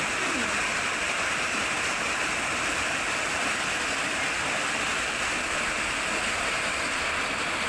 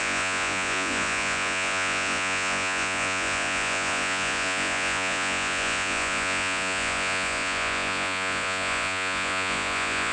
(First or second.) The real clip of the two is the first